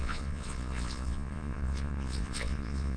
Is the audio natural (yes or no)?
no